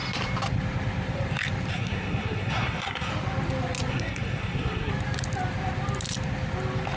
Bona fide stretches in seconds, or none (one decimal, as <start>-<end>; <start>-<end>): 0.0-1.7; 3.1-3.9; 4.9-7.0